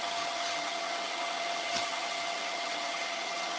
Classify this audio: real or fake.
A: fake